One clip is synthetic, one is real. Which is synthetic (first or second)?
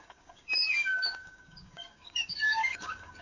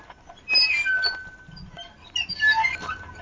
first